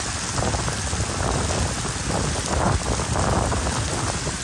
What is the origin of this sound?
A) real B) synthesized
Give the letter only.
A